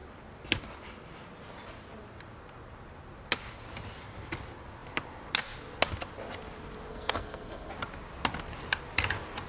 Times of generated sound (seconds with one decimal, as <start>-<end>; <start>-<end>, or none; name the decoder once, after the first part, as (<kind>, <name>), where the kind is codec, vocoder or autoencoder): 6.9-7.7 (codec, SNAC)